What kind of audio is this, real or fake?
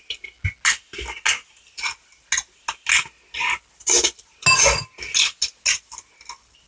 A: real